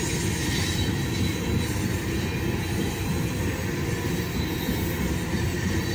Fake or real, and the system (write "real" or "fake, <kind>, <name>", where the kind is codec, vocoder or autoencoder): real